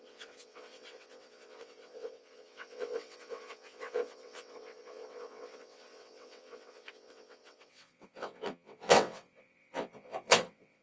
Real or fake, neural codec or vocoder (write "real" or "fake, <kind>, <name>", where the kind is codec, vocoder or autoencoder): fake, vocoder, WaveNeXt